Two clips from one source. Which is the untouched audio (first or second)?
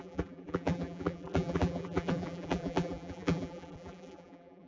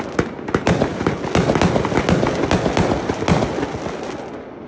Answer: second